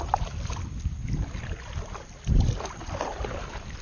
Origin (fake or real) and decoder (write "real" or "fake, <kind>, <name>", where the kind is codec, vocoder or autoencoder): real